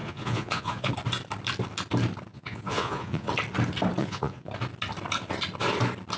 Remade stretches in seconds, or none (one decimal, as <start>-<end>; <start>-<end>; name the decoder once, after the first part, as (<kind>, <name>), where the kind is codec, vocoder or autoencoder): 0.0-0.9 (vocoder, Vocos); 2.3-3.3; 4.0-4.5